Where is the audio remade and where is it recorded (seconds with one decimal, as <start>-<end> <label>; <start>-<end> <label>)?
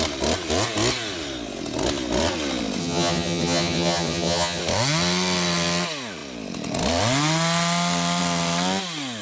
0.0-2.8 recorded; 2.8-4.6 remade; 4.6-9.2 recorded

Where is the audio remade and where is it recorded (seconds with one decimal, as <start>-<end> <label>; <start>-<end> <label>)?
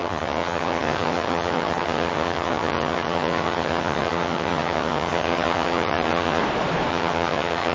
0.0-6.4 remade; 6.4-6.9 recorded; 6.9-7.7 remade